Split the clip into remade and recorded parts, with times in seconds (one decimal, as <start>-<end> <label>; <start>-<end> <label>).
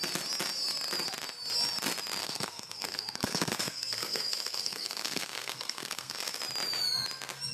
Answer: 0.0-2.2 recorded; 2.2-6.4 remade; 6.4-7.5 recorded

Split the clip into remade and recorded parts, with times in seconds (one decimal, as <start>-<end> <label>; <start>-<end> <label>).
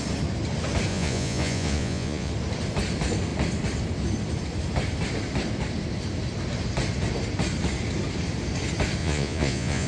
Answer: 0.0-0.9 recorded; 0.9-2.3 remade; 2.3-9.0 recorded; 9.0-9.9 remade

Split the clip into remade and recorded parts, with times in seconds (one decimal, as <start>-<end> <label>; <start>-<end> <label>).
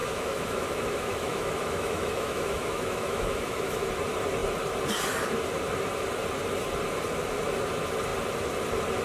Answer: 0.0-3.9 remade; 3.9-9.0 recorded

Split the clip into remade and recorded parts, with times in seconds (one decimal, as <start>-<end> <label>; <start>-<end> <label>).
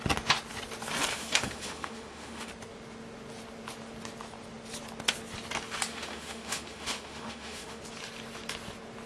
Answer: 0.0-1.1 recorded; 1.1-2.5 remade; 2.5-5.9 recorded; 5.9-7.8 remade; 7.8-9.1 recorded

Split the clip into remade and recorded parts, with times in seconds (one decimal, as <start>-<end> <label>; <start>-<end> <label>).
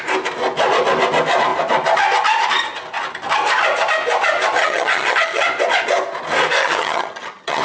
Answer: 0.0-4.6 recorded; 4.6-5.4 remade; 5.4-6.6 recorded; 6.6-7.6 remade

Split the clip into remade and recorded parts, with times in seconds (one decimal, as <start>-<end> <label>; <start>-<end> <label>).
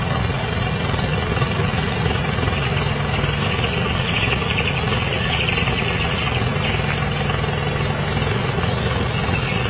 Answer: 0.0-2.7 remade; 2.7-3.5 recorded; 3.5-6.5 remade; 6.5-8.3 recorded; 8.3-9.7 remade